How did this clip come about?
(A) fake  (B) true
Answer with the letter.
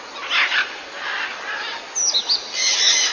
B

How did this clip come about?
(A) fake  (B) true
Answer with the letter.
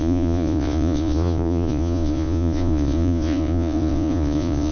A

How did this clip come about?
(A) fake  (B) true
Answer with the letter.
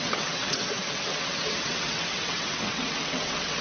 A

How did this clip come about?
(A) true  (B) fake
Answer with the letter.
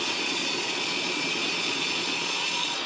B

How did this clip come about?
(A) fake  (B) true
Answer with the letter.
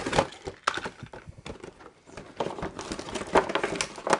B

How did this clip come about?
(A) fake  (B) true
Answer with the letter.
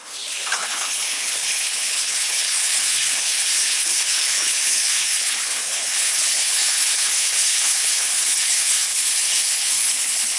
A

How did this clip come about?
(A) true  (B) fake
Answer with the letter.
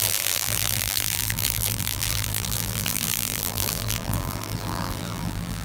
B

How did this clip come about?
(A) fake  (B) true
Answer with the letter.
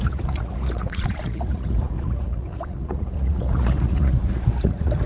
A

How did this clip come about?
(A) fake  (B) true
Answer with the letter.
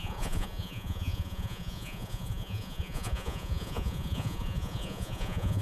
A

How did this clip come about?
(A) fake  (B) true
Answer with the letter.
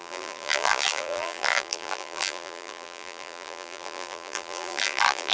A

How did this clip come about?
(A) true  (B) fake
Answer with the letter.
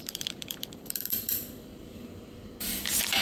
B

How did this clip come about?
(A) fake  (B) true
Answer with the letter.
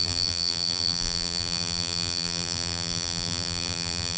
A